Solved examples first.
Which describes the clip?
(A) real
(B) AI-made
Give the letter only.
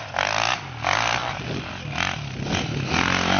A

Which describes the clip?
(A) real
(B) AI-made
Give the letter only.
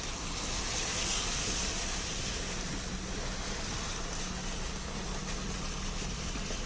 A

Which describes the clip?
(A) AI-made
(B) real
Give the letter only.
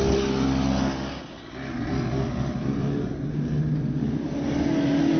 B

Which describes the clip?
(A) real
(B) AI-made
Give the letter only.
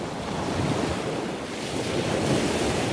A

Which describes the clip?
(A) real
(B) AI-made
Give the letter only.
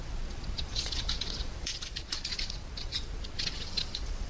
B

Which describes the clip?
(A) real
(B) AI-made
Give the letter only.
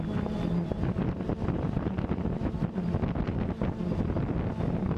A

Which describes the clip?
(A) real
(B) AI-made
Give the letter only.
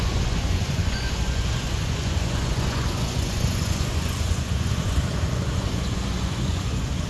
B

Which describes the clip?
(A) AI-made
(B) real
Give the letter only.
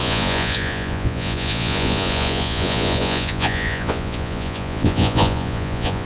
A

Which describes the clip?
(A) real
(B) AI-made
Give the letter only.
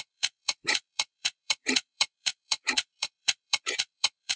B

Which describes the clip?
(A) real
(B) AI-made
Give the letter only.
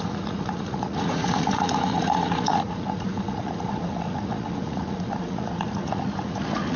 B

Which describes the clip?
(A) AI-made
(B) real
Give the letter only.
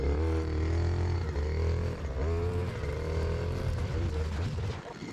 B